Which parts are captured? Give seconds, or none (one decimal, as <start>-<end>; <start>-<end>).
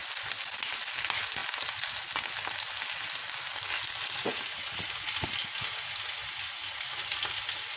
0.0-7.8